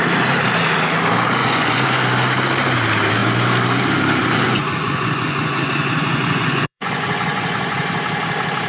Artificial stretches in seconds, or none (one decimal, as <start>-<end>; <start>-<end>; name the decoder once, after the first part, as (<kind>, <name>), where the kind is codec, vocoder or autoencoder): 1.4-2.0 (vocoder, Vocos); 4.2-7.9